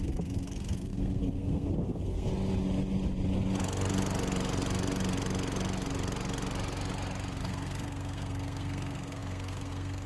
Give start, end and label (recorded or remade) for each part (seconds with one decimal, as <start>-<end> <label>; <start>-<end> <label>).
0.0-2.3 remade; 2.3-7.4 recorded; 7.4-10.1 remade